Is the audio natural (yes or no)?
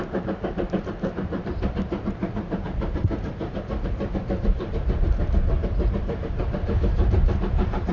no